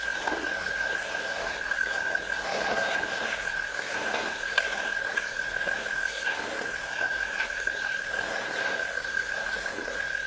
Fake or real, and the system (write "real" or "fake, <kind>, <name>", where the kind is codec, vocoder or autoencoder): fake, codec, SNAC